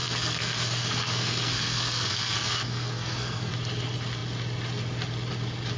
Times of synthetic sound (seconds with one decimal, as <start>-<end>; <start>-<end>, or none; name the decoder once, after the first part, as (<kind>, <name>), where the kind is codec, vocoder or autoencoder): 0.0-3.5 (codec, SNAC)